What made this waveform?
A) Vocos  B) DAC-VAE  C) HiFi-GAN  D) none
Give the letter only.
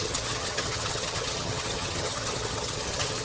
C